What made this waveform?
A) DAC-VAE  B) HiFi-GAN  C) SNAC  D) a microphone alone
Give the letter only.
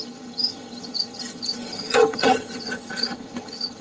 B